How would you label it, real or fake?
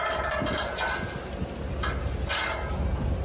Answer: real